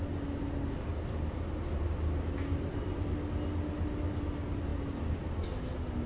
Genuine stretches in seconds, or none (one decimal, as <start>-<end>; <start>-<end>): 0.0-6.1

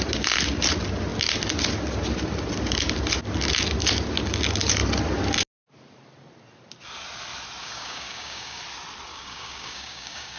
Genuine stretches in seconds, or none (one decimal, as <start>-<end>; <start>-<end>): 0.0-7.6; 8.6-9.1

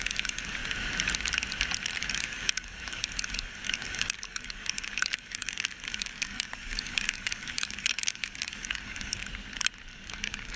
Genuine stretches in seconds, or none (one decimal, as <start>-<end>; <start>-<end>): 0.6-2.0; 9.2-9.9